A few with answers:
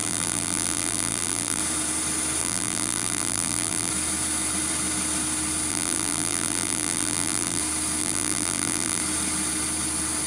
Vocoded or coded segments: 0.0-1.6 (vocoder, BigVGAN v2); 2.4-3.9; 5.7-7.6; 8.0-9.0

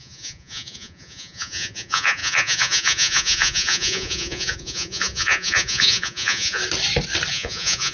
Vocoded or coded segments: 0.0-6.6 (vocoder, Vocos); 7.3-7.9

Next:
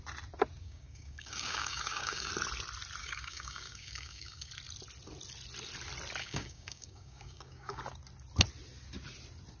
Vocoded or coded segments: 0.6-2.3 (codec, DAC); 3.0-4.5; 6.2-7.8

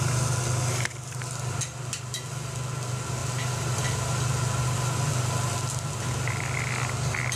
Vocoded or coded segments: none

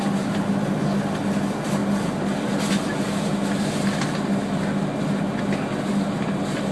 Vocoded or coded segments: none

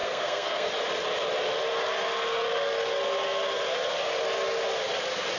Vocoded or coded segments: 0.0-0.7 (codec, SNAC)